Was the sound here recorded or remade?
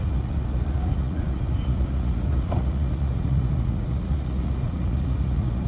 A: remade